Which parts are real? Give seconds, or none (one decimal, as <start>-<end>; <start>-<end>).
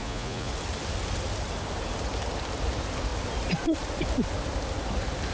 0.5-5.3